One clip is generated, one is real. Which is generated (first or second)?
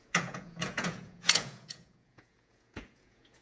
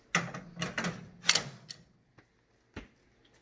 first